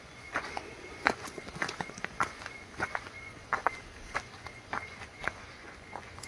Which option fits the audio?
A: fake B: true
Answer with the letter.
A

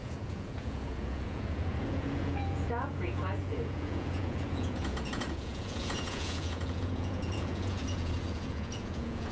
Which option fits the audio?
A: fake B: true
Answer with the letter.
A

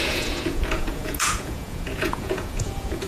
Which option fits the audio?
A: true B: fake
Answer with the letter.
B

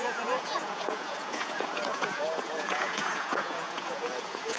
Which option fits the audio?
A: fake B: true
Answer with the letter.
A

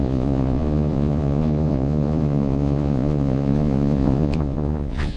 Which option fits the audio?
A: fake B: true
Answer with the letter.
A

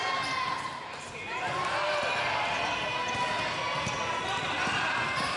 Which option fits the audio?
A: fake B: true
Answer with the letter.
B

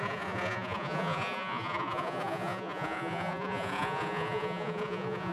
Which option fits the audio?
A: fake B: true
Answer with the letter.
A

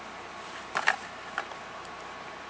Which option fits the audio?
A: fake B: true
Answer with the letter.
B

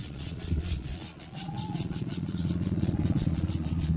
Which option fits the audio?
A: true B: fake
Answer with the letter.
B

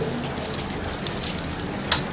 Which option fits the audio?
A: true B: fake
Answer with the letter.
A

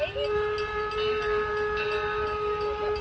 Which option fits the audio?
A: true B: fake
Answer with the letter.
A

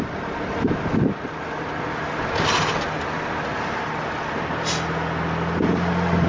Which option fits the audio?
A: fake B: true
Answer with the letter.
B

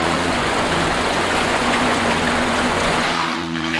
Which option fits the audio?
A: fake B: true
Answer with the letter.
A